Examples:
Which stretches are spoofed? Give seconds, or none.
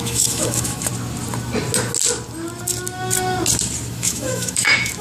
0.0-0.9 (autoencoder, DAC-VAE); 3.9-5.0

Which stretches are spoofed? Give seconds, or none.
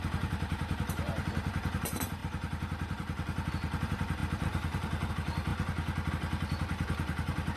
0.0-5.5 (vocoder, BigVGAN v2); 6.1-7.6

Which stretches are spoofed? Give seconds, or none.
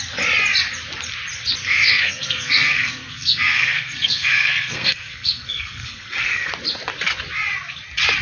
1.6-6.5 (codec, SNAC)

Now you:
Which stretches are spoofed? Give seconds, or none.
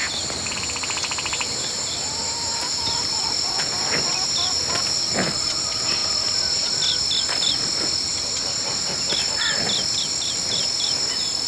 none